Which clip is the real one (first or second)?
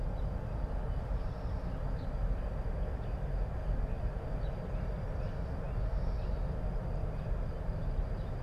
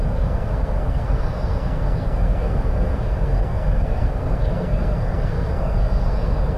first